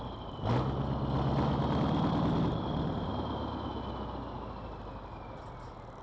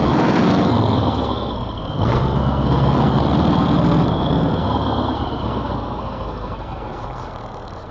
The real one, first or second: first